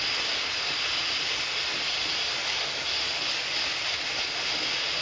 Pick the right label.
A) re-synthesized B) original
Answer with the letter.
B